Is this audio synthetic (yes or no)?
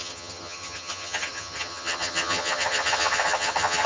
yes